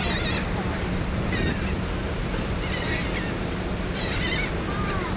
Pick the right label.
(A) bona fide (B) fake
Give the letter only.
B